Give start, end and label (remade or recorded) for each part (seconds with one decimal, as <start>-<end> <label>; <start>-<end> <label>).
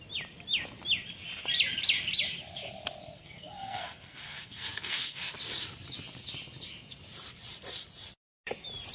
0.0-3.0 recorded; 3.0-5.3 remade; 5.3-8.9 recorded